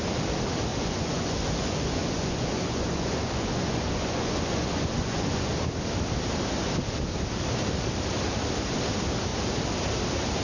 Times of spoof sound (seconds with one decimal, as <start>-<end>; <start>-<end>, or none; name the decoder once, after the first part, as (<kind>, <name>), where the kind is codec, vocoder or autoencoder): 0.7-5.5 (vocoder, Vocos)